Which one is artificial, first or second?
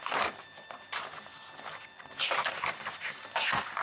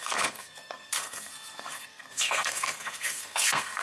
second